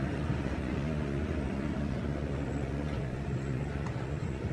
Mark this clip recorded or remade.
remade